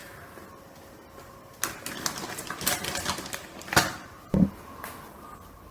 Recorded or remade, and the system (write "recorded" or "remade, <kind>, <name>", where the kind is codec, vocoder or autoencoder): recorded